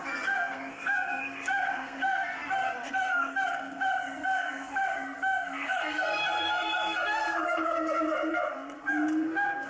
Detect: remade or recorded remade